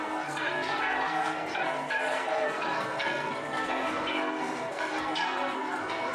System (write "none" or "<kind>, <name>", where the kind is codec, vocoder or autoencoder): codec, SNAC